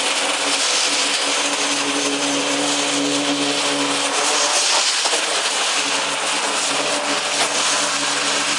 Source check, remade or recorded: recorded